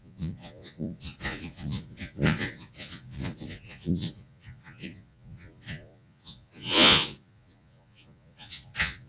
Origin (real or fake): fake